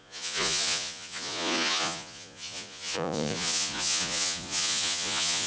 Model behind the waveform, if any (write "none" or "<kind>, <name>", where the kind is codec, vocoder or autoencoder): vocoder, Vocos